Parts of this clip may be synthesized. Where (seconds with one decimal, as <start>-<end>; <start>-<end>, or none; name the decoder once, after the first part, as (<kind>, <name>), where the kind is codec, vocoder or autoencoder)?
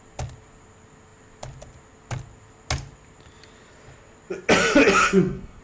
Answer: 5.0-5.6 (codec, SNAC)